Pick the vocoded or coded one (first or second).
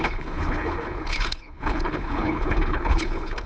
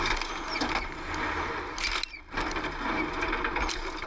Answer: first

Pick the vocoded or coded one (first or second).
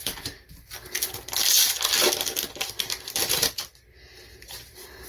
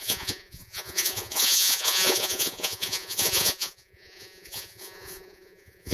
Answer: second